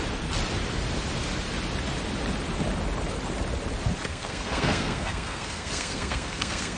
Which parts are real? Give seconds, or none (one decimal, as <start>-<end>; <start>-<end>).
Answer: 0.0-4.1